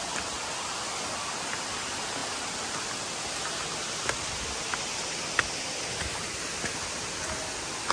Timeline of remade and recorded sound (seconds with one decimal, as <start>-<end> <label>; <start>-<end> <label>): 0.0-7.9 recorded